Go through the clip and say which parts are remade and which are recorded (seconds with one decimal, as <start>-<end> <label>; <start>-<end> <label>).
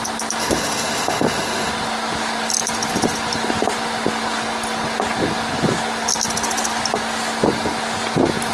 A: 0.0-0.4 recorded; 0.4-1.7 remade; 1.7-8.5 recorded